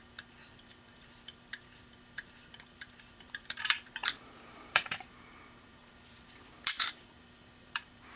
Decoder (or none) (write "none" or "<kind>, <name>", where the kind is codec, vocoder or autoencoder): vocoder, BigVGAN v2